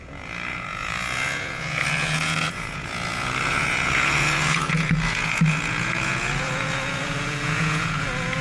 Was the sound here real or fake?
fake